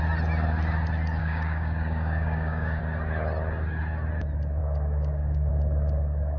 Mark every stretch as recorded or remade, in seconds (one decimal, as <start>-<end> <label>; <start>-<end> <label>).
0.0-1.2 recorded; 1.2-2.8 remade; 2.8-4.6 recorded; 4.6-5.5 remade; 5.5-6.4 recorded